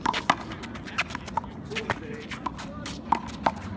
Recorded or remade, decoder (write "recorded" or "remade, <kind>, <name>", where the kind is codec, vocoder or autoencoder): recorded